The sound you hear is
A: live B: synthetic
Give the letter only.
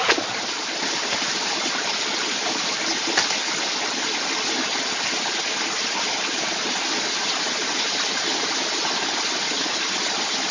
A